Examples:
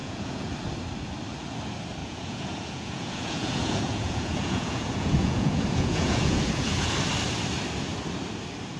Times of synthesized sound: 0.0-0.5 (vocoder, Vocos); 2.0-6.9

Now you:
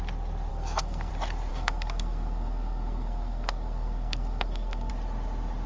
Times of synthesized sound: 0.5-1.1 (codec, SNAC); 1.5-4.9

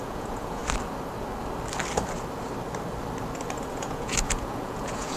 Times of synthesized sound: 0.0-0.6 (vocoder, Vocos); 3.7-5.2

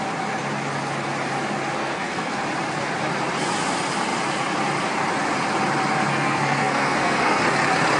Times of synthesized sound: 1.8-2.3 (codec, SNAC); 6.1-7.4

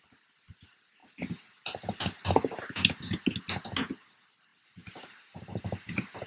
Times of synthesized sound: none